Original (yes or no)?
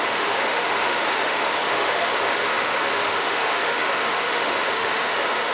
no